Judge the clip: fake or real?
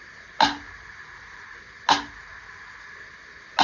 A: real